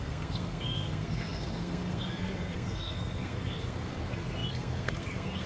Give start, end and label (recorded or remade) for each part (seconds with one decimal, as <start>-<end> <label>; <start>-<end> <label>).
0.0-5.5 remade